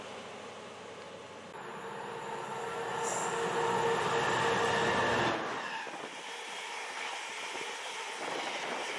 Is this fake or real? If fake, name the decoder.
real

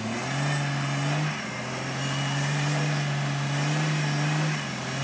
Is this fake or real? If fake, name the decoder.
real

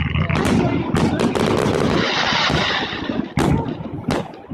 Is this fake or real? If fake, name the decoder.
real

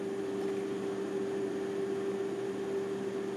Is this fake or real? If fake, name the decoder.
real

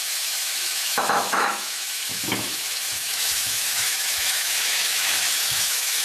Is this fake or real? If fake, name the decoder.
fake, autoencoder, DAC-VAE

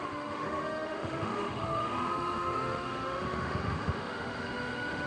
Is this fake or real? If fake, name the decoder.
fake, autoencoder, DAC-VAE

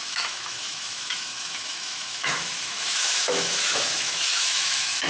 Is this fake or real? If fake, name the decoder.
fake, autoencoder, DAC-VAE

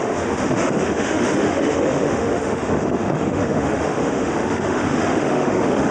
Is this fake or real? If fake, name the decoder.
fake, autoencoder, DAC-VAE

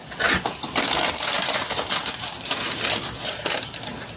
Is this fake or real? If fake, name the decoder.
real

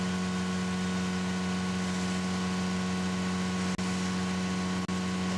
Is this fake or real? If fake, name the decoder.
real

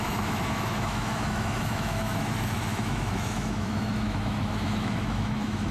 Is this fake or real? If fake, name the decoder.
fake, autoencoder, DAC-VAE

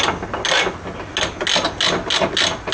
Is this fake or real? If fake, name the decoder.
real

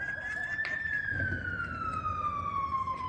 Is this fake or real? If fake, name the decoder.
real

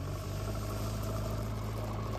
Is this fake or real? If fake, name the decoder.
real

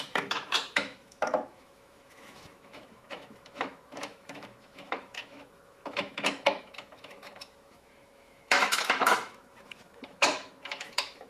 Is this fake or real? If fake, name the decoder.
fake, autoencoder, DAC-VAE